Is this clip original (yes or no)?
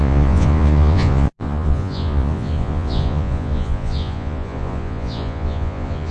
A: no